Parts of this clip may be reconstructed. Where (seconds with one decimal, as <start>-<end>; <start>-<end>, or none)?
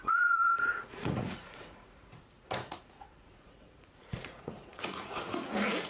0.0-5.9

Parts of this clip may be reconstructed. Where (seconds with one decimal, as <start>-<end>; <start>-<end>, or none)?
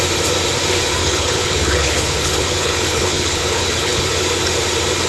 1.0-4.1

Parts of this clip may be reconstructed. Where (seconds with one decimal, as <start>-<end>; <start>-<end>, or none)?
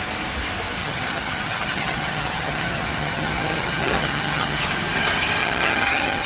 0.8-4.6; 5.4-6.3